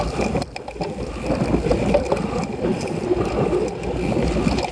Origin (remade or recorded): recorded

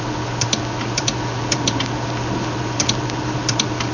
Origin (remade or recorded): recorded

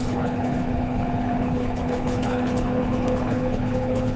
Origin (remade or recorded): remade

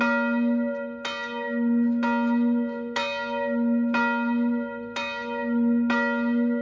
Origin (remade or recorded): recorded